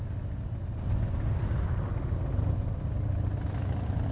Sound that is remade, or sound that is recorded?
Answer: recorded